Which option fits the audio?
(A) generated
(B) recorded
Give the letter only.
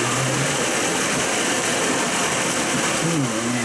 B